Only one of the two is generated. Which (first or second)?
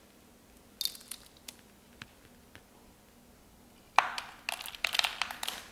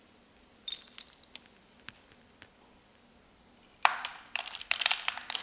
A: second